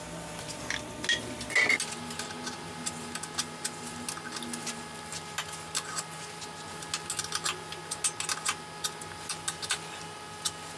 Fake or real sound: real